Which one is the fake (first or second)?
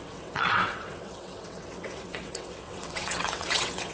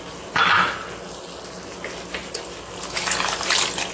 first